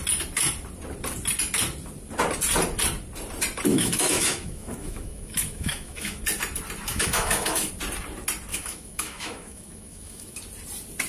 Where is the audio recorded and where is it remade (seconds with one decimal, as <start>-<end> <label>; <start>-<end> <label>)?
0.0-3.7 recorded; 3.7-6.2 remade; 6.2-6.9 recorded; 6.9-7.7 remade; 7.7-8.5 recorded; 8.5-10.4 remade; 10.4-11.1 recorded